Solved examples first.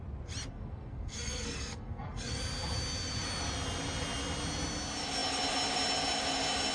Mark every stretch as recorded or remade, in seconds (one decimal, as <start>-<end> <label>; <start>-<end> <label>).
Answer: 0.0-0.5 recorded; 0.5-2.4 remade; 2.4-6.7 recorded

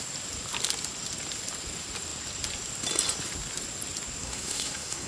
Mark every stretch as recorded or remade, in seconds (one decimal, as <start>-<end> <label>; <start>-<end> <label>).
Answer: 0.0-4.2 recorded; 4.2-5.1 remade

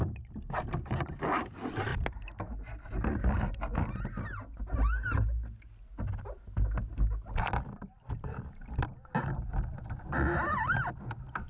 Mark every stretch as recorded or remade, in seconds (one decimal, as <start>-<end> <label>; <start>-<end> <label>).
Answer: 0.0-11.5 recorded

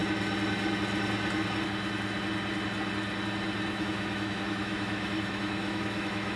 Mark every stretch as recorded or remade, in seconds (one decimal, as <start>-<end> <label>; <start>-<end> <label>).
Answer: 0.0-3.7 recorded; 3.7-6.4 remade

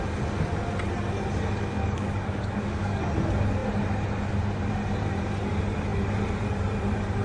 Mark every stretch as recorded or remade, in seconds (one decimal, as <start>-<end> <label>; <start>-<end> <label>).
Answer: 0.0-1.8 recorded; 1.8-3.0 remade; 3.0-7.2 recorded